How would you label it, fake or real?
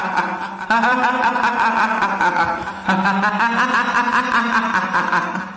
real